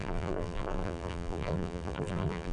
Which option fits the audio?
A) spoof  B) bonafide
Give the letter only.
A